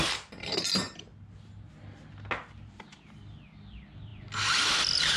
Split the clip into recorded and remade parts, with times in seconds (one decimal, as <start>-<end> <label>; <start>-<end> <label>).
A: 0.0-1.1 remade; 1.1-2.6 recorded; 2.6-5.2 remade